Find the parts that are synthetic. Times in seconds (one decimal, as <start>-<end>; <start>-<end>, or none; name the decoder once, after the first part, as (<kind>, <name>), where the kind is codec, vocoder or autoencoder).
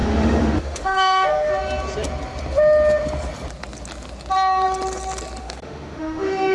0.0-1.5 (autoencoder, DAC-VAE); 5.4-6.5